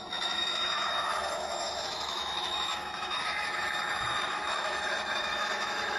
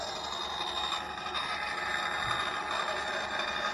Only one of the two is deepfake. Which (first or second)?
first